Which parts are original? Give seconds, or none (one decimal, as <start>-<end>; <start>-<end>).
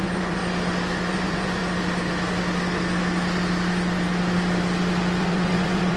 0.4-1.1; 1.6-5.2